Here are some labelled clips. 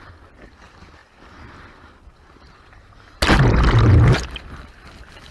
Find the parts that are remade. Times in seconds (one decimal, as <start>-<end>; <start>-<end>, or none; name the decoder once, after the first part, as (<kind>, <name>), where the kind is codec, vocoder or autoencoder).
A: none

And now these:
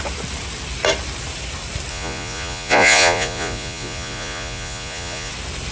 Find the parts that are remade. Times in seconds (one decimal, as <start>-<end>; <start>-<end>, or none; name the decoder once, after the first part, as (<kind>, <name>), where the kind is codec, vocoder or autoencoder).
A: 1.9-5.3 (vocoder, Vocos)

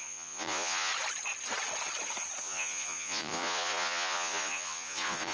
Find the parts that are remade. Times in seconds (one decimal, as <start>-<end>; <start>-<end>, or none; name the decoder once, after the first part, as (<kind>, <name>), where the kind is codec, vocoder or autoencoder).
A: 0.0-0.9 (vocoder, Vocos); 2.4-5.3